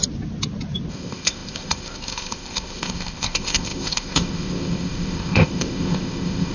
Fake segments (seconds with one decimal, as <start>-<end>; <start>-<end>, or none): 0.9-6.5